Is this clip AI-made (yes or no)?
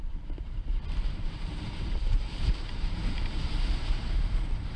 yes